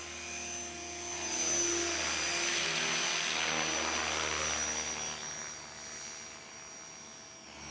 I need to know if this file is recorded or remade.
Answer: recorded